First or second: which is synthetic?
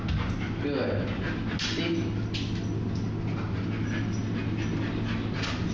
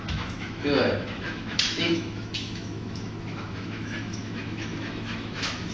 second